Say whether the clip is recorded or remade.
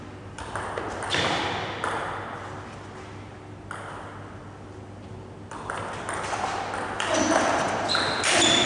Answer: recorded